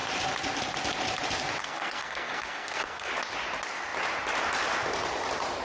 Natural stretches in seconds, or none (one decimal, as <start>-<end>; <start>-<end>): 0.0-1.6; 3.1-5.6